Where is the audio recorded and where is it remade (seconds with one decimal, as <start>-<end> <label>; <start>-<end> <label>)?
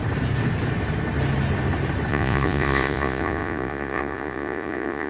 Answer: 0.0-2.1 recorded; 2.1-5.1 remade